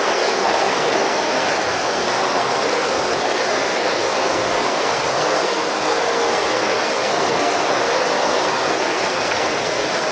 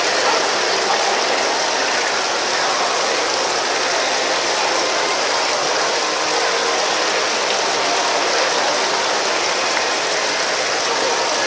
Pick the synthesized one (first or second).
first